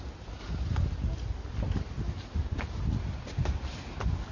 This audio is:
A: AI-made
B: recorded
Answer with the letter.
B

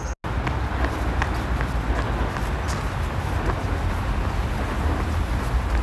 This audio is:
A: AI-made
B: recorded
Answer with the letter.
B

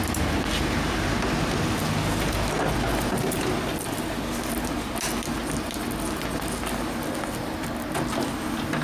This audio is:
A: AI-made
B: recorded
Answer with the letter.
B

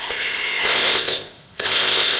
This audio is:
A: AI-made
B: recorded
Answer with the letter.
A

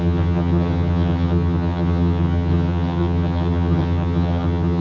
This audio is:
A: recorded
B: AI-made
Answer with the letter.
B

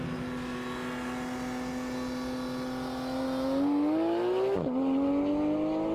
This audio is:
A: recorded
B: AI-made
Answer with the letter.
A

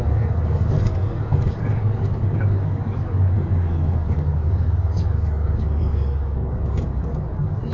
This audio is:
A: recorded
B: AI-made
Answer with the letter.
B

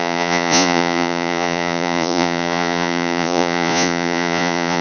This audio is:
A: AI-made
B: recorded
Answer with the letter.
A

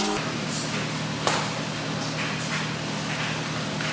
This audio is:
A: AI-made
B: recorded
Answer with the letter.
B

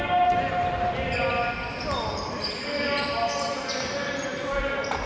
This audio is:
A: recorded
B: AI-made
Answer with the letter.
A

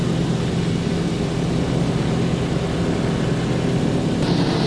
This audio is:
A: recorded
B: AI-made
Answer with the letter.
A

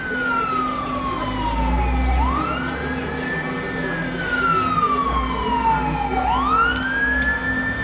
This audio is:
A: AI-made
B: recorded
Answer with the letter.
B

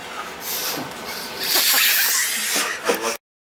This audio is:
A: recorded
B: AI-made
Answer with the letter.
A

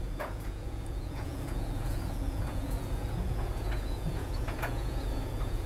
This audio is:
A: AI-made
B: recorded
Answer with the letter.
A